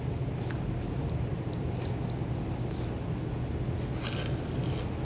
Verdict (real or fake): real